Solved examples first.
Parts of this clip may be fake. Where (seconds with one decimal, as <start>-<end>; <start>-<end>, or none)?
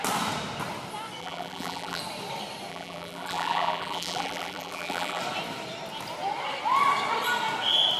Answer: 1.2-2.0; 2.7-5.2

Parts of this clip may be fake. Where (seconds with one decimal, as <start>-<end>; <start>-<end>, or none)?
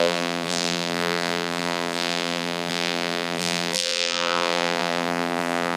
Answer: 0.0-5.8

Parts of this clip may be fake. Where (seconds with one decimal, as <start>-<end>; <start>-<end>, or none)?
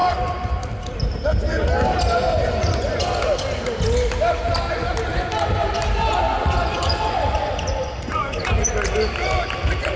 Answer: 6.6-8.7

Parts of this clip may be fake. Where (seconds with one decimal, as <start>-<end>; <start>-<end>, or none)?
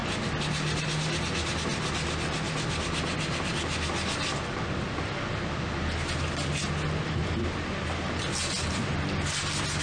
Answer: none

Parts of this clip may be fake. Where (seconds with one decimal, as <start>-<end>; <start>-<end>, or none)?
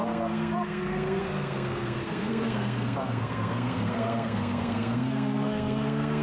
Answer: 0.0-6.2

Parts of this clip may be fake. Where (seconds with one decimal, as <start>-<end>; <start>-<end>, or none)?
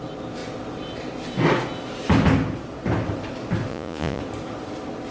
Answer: 3.7-4.2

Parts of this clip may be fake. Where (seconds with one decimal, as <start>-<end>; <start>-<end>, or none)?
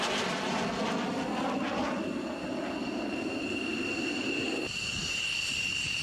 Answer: none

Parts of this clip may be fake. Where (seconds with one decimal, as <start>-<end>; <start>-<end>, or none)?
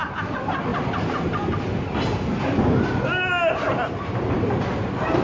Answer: none